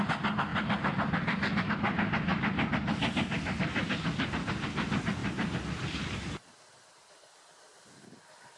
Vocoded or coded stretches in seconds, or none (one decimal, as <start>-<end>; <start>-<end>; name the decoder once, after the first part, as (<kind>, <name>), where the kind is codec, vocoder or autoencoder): none